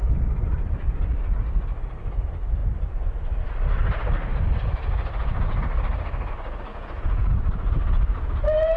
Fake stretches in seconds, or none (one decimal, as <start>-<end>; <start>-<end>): 6.7-7.3